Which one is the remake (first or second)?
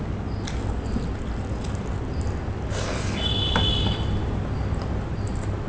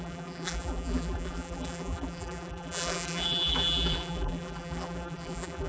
second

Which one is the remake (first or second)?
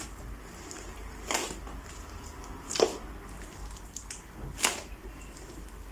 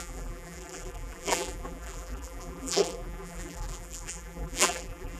second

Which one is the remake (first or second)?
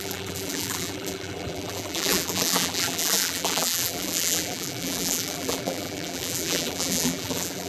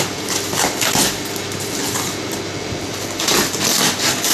first